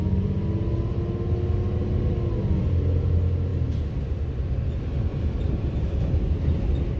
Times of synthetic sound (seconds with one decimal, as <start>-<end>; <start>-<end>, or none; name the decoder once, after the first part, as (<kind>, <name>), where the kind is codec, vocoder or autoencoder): 5.1-6.2 (vocoder, BigVGAN v2)